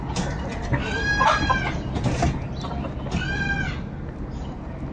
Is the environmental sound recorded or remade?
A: recorded